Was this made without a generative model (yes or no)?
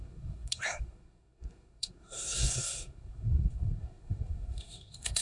no